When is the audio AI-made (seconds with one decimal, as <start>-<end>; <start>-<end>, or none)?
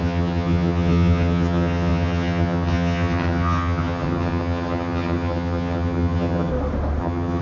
0.0-6.5; 7.0-7.4